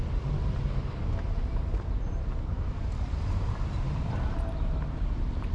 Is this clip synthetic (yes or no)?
no